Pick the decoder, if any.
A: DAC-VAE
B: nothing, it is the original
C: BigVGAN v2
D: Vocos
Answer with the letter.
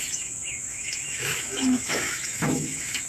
A